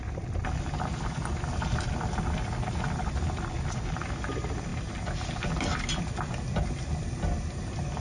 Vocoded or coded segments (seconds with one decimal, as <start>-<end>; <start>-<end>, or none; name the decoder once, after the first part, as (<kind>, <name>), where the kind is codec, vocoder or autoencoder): none